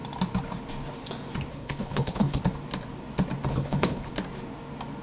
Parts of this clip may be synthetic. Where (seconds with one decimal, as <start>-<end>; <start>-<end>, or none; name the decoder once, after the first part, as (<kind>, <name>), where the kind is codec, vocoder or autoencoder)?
1.5-2.4 (codec, HILCodec); 3.5-4.1